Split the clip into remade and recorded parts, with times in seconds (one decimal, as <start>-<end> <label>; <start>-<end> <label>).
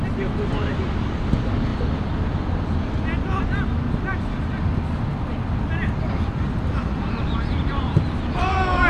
0.0-8.9 recorded